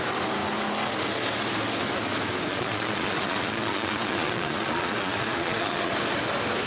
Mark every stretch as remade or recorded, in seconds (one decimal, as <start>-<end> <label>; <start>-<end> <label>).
0.0-2.5 recorded; 2.5-5.9 remade; 5.9-6.7 recorded